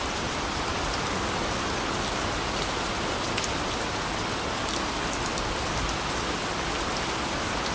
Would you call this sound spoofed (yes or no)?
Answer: no